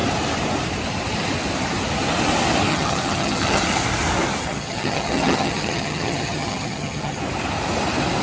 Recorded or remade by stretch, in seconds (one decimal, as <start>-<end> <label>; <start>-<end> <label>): 0.0-2.7 recorded; 2.7-3.6 remade; 3.6-4.4 recorded; 4.4-7.2 remade; 7.2-8.2 recorded